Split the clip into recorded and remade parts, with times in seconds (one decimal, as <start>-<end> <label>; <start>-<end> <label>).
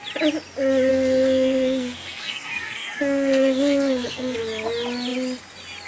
0.0-0.9 recorded; 0.9-4.4 remade; 4.4-5.9 recorded